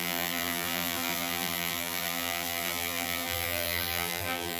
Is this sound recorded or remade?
remade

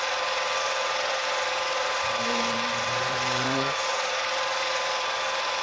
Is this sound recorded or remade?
remade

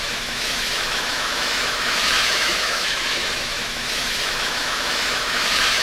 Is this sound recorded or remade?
remade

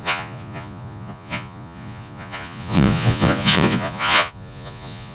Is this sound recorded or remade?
remade